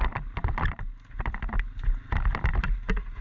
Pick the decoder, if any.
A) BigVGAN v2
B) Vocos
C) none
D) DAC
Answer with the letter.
C